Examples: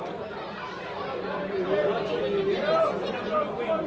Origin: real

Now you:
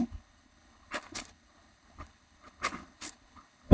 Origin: fake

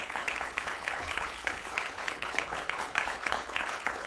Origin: fake